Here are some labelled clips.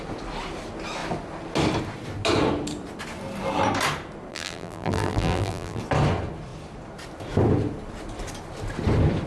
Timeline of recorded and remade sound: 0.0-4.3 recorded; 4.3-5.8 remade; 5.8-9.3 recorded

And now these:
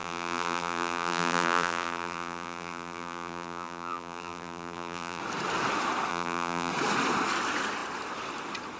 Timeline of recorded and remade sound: 0.0-5.2 remade; 5.2-6.1 recorded; 6.1-6.7 remade; 6.7-8.8 recorded

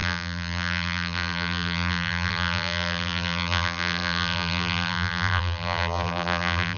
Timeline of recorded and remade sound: 0.0-6.8 remade